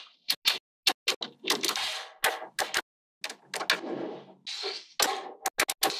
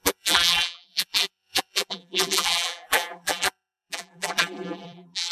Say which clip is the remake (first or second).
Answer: second